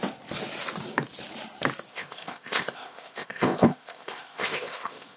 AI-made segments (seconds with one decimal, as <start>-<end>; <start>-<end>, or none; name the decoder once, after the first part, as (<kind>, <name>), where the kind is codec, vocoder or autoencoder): 1.9-5.2 (codec, ZipCodec)

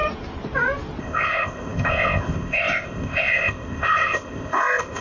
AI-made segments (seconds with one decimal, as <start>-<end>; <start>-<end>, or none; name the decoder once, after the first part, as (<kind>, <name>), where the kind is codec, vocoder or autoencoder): 1.0-5.0 (codec, ZipCodec)

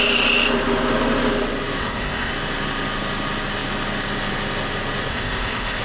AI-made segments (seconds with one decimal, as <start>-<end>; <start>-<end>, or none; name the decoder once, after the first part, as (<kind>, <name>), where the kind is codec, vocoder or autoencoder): 1.8-2.3 (codec, ZipCodec); 5.1-5.8

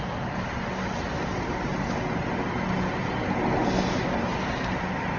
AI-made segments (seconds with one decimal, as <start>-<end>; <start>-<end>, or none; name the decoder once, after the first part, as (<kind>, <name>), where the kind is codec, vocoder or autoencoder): none